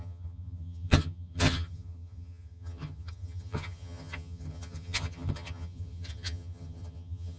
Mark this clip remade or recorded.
remade